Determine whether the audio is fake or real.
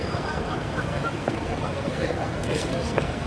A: fake